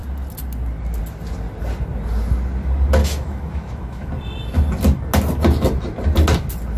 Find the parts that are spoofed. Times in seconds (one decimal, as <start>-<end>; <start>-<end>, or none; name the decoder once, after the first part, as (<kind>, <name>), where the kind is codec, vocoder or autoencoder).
3.0-4.1 (autoencoder, DAC-VAE)